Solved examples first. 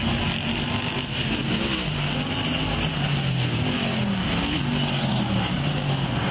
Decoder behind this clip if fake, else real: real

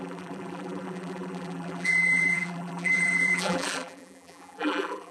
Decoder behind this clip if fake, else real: fake, vocoder, BigVGAN v2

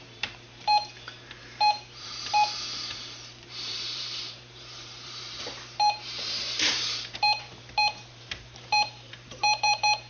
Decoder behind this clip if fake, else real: fake, vocoder, BigVGAN v2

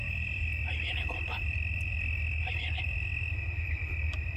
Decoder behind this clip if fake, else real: fake, vocoder, BigVGAN v2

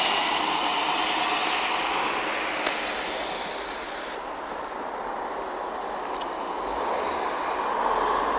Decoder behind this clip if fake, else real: real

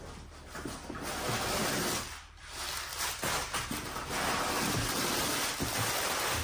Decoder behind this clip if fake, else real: real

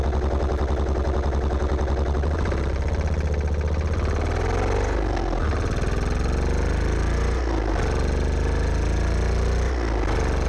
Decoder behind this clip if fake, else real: real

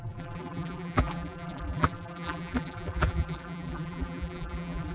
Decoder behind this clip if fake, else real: fake, vocoder, BigVGAN v2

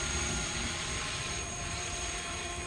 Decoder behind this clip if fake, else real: fake, vocoder, BigVGAN v2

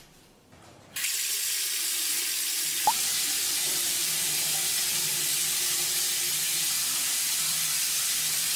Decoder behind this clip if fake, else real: fake, vocoder, BigVGAN v2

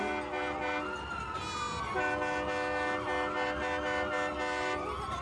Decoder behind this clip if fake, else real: real